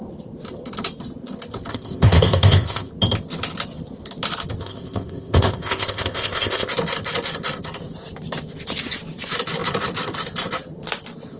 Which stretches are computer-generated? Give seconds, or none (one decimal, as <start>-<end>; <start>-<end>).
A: 1.7-2.9; 4.6-6.7